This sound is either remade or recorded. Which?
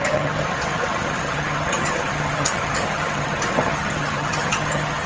remade